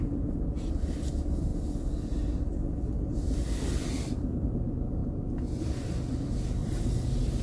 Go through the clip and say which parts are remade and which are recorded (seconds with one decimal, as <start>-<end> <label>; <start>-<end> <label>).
0.0-6.6 recorded; 6.6-7.4 remade